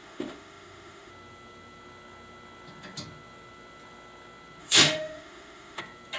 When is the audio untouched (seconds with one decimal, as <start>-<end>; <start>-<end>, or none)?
1.1-4.6; 5.8-6.2